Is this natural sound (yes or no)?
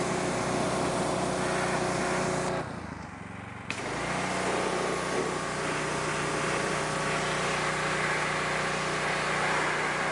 yes